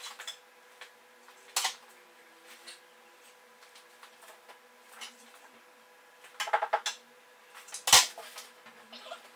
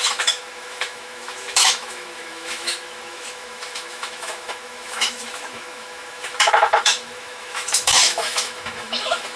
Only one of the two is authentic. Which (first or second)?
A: first